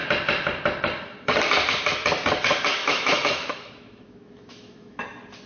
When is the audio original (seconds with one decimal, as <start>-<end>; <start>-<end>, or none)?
0.0-2.8; 5.0-5.5